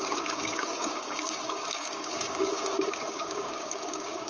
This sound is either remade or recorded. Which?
remade